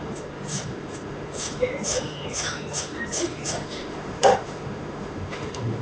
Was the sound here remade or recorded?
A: remade